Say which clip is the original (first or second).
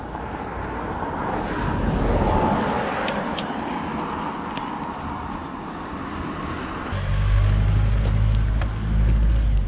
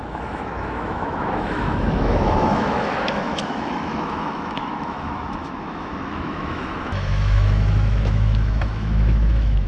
first